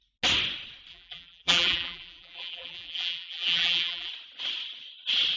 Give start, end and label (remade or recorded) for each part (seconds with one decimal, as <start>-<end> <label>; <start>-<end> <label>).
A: 0.0-0.9 recorded; 0.9-4.1 remade; 4.1-5.4 recorded